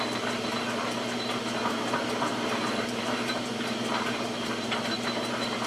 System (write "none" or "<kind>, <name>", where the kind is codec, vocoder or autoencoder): vocoder, BigVGAN v2